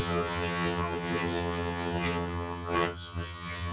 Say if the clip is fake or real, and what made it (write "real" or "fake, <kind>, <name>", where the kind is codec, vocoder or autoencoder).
fake, vocoder, HiFi-GAN